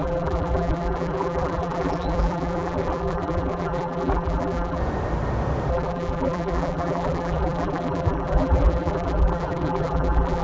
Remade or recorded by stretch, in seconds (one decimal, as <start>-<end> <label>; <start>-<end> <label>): 0.0-4.8 remade; 4.8-5.7 recorded; 5.7-10.4 remade